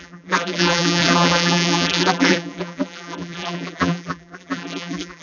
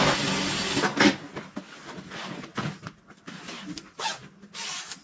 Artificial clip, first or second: first